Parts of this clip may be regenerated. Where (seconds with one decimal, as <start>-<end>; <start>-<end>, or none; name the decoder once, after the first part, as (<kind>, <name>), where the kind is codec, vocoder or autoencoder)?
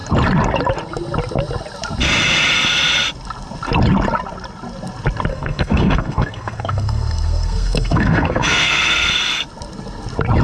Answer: 5.3-9.1 (codec, SNAC)